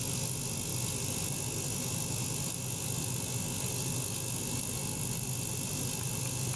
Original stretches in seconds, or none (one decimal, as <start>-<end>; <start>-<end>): 0.0-6.6